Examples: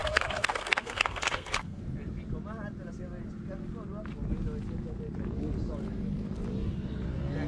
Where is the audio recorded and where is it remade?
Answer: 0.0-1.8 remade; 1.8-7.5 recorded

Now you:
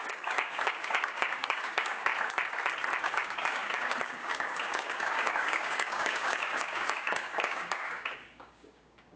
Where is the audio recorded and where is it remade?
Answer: 0.0-2.1 remade; 2.1-3.0 recorded; 3.0-9.2 remade

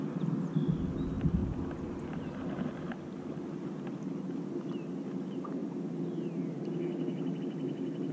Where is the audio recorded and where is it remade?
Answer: 0.0-8.1 recorded